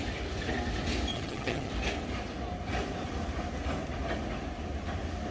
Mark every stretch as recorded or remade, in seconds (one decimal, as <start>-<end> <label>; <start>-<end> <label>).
0.0-1.1 recorded; 1.1-1.7 remade; 1.7-5.3 recorded